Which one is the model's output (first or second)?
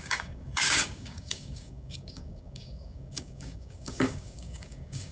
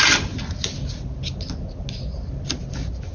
first